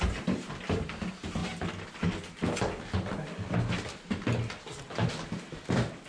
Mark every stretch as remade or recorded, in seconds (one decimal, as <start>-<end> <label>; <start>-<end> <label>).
0.0-6.1 recorded